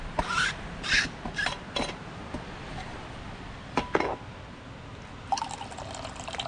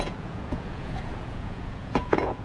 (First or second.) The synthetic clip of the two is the second